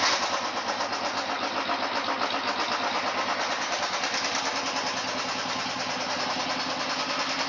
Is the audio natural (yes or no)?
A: yes